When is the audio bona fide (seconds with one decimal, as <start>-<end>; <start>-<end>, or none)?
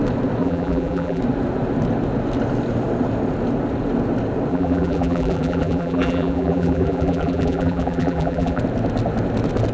0.0-0.4; 1.2-4.5; 8.6-9.7